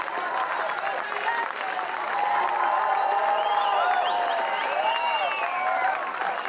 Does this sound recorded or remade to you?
recorded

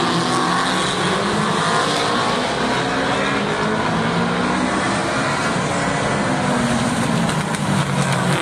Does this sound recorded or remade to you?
recorded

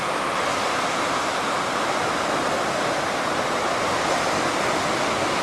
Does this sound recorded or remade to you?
recorded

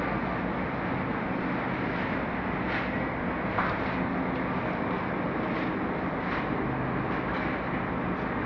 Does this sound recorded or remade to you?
recorded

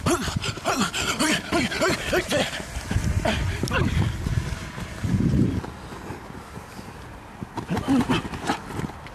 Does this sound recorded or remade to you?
recorded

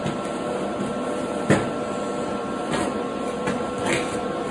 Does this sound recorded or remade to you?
recorded